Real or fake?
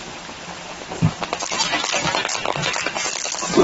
fake